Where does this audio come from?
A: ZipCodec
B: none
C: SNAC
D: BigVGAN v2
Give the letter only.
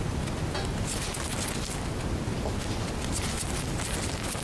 B